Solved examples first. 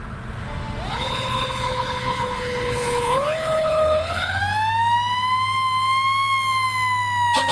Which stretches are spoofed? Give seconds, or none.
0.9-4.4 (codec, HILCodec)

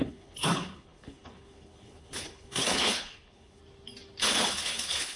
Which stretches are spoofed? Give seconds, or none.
0.0-3.6 (codec, HILCodec); 4.2-5.2

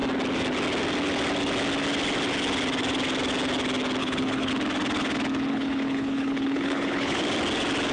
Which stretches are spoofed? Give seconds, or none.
4.0-4.5 (codec, HILCodec); 5.5-7.2

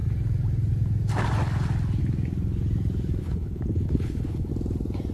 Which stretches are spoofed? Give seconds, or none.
3.2-4.5 (codec, HILCodec)

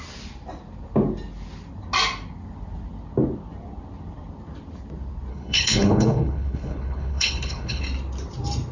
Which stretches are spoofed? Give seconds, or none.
5.3-7.8 (codec, HILCodec)

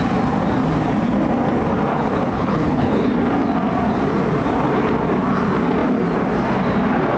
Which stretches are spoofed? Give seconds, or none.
1.9-3.1 (codec, HILCodec)